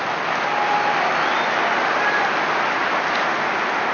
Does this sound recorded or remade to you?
recorded